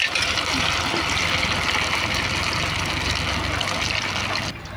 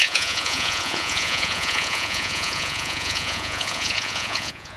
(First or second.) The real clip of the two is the first